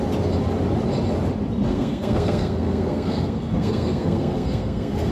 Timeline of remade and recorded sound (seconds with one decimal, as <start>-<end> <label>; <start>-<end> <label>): 0.0-1.7 recorded; 1.7-5.1 remade